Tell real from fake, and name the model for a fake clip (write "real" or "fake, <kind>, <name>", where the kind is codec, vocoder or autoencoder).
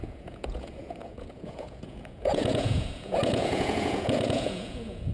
fake, vocoder, Vocos